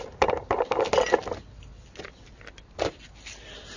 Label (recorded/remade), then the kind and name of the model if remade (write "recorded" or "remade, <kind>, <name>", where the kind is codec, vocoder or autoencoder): recorded